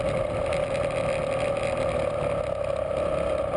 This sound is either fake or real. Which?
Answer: real